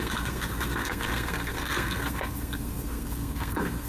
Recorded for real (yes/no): no